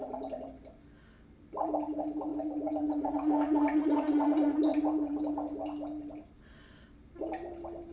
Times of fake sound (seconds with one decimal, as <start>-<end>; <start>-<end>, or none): 2.3-3.1; 4.7-5.3